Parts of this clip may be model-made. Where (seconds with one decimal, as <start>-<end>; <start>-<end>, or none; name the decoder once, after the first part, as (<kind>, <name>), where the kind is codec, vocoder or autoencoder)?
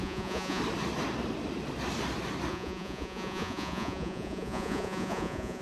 0.0-0.6 (vocoder, Vocos); 2.5-5.6